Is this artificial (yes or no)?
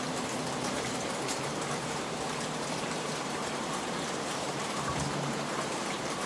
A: yes